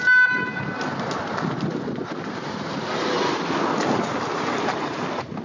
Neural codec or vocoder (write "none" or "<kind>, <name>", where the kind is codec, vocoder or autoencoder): none